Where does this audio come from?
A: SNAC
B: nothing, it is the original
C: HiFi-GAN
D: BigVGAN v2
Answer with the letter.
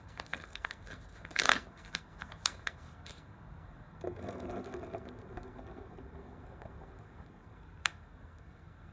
A